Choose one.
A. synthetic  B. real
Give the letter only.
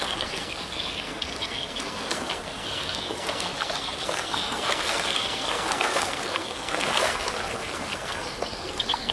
A